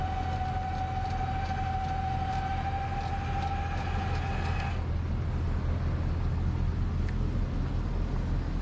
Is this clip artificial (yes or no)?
no